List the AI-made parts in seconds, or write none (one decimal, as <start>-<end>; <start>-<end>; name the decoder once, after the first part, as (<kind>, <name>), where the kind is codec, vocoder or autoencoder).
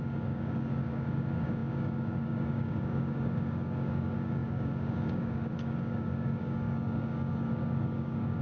0.0-8.4 (codec, DAC)